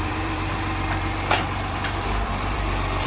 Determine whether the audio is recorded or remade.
remade